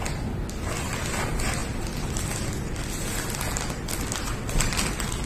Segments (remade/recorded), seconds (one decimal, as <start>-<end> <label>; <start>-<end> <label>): 0.0-5.3 recorded